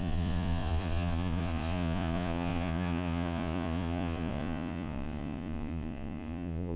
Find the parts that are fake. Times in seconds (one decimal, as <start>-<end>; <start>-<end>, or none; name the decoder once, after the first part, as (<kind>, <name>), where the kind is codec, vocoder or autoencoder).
0.0-6.8 (vocoder, Vocos)